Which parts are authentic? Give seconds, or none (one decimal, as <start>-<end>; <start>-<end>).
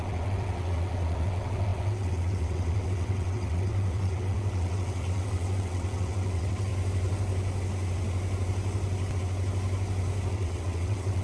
6.7-10.3